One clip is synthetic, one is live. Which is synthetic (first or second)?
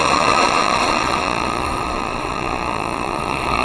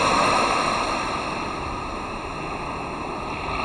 first